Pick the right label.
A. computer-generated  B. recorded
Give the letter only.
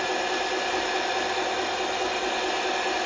B